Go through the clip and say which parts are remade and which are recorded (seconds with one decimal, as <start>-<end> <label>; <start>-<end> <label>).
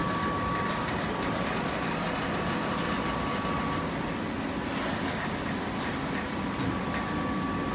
0.0-7.7 recorded